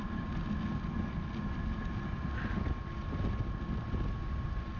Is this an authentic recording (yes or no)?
yes